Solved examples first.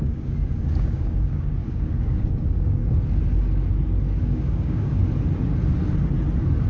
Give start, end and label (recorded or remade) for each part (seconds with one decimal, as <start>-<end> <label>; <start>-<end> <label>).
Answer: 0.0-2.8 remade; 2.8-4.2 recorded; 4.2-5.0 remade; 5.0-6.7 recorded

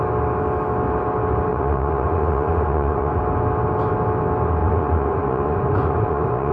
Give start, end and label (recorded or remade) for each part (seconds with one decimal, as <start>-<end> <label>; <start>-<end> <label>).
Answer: 0.0-1.5 recorded; 1.5-3.2 remade; 3.2-4.6 recorded; 4.6-6.5 remade

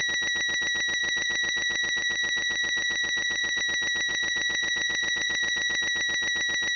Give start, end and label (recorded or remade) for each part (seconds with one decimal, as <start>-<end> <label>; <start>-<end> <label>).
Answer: 0.0-1.0 recorded; 1.0-3.6 remade; 3.6-4.1 recorded; 4.1-5.8 remade; 5.8-6.8 recorded